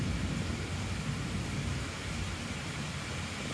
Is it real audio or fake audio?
real